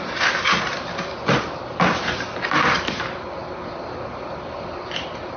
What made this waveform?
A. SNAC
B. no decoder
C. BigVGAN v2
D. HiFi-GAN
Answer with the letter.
C